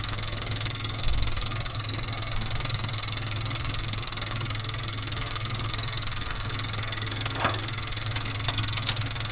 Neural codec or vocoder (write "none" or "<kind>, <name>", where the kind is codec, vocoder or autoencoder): codec, SNAC